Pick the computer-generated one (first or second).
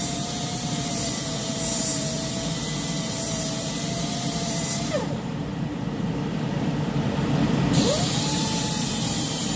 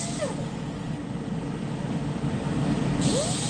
first